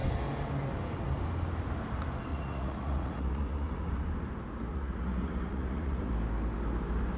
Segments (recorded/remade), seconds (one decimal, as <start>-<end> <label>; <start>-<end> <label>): 0.0-2.3 recorded; 2.3-3.9 remade; 3.9-4.7 recorded; 4.7-6.1 remade; 6.1-7.2 recorded